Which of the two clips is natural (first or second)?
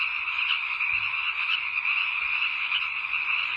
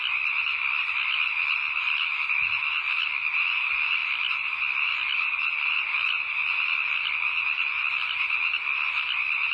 second